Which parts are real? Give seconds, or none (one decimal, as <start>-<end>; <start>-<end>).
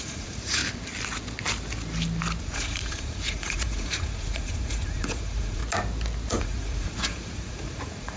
0.6-2.4; 5.6-6.4